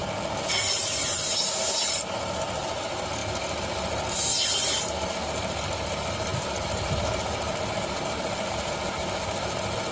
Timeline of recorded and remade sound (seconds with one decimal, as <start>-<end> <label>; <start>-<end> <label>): 0.0-9.9 recorded